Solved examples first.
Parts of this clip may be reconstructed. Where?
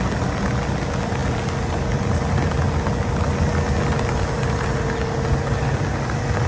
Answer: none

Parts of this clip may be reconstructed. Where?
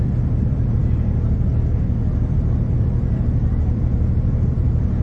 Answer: 0.0-0.8 (vocoder, BigVGAN v2); 2.2-5.0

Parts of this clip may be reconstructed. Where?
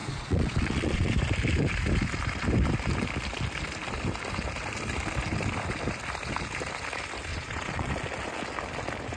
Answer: 0.0-1.1 (vocoder, Vocos); 7.3-7.9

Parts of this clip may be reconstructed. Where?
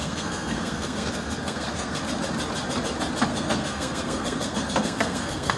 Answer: 0.0-2.0 (codec, SNAC); 3.3-5.6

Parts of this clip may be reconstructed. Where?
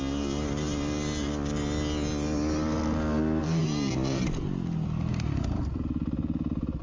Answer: none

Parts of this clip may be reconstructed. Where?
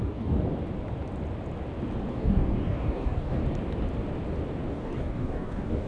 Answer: 0.0-0.4 (codec, DAC); 2.1-3.4; 4.7-5.9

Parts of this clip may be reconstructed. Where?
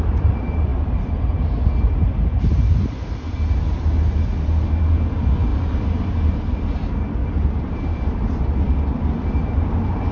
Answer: 5.5-6.6 (vocoder, BigVGAN v2); 7.2-9.3